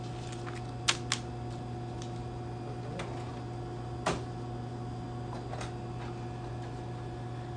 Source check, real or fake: real